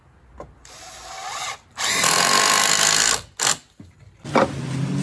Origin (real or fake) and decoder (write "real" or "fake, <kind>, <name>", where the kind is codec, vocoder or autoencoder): real